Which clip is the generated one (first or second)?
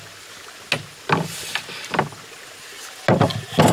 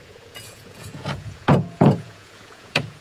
second